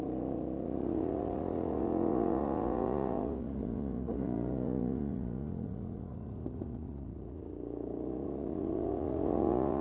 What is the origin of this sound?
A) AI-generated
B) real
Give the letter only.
A